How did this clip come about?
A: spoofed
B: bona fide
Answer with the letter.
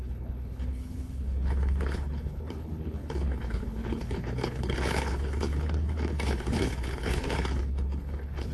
A